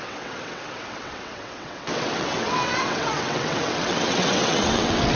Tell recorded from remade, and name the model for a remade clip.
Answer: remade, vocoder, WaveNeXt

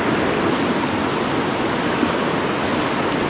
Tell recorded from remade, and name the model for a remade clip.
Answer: recorded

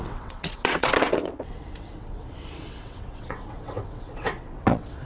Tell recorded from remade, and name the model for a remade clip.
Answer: remade, vocoder, WaveNeXt